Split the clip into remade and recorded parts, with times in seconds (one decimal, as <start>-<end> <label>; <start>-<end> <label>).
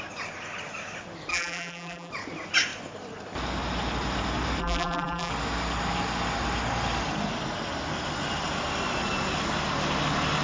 0.0-1.3 recorded; 1.3-2.1 remade; 2.1-4.6 recorded; 4.6-5.3 remade; 5.3-10.4 recorded